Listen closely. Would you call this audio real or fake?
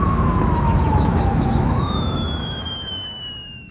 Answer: fake